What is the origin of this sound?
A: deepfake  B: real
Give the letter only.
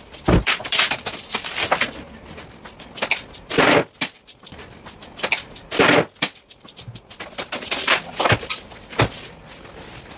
B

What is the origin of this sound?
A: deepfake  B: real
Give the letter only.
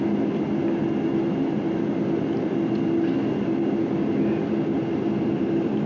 B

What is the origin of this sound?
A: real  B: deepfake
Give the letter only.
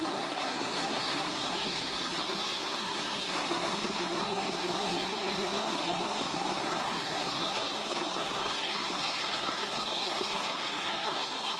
B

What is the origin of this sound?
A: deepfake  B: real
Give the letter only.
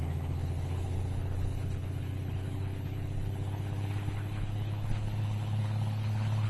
A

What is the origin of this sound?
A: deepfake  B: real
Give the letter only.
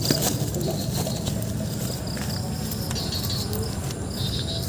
B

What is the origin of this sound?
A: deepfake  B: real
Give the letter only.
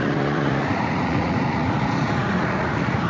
A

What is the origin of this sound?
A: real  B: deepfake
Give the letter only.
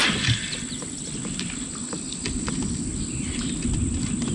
A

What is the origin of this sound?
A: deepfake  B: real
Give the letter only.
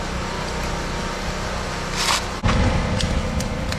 B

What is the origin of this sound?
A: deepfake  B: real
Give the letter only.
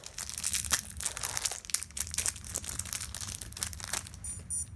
B